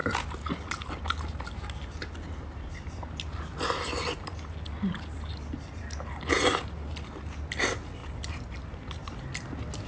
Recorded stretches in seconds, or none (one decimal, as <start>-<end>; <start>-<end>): 0.0-9.9